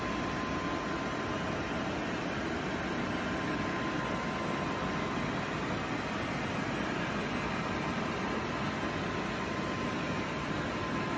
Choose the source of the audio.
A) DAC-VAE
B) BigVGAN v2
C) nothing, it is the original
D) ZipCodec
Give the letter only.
C